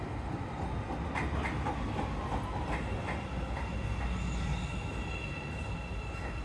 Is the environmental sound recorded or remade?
recorded